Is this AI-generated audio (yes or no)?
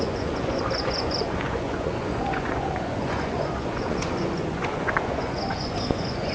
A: yes